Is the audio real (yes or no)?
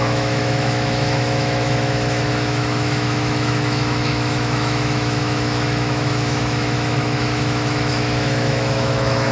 no